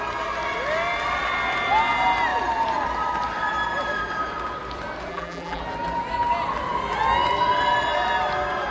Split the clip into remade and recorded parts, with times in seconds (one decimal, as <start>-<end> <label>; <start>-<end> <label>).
0.0-5.1 recorded; 5.1-5.6 remade; 5.6-8.7 recorded